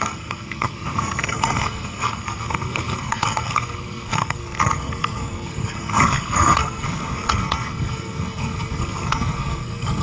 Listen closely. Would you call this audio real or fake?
fake